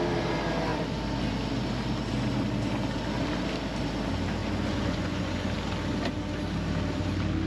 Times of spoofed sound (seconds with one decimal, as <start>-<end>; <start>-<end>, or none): 4.4-5.5